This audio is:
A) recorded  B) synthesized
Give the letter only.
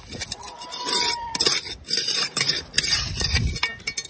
A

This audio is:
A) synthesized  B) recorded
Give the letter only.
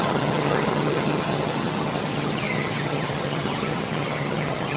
A